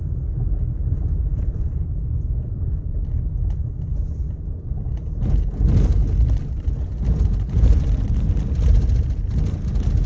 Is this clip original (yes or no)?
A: yes